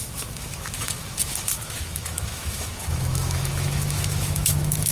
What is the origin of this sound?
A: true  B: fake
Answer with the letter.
B